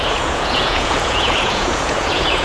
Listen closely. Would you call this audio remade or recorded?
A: remade